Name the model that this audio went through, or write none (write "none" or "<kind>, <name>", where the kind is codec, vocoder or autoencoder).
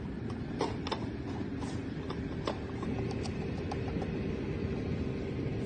none